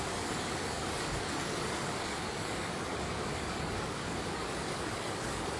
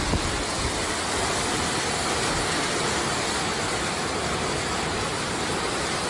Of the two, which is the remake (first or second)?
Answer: first